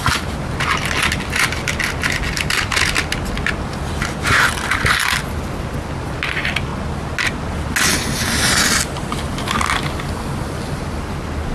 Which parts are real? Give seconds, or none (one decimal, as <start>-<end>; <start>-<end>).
0.0-11.5